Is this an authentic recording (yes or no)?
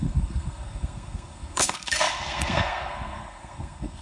no